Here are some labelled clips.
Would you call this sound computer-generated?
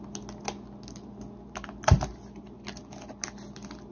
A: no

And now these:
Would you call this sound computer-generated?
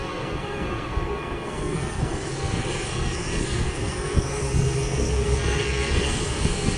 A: yes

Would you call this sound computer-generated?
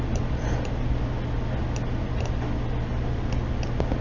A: no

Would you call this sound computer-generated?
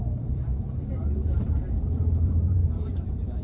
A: yes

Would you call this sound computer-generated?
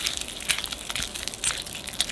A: no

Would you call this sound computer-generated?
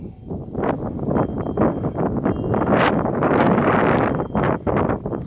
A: no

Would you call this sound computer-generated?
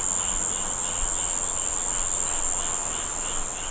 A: no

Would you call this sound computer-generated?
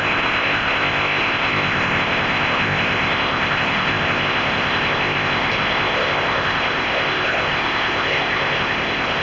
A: yes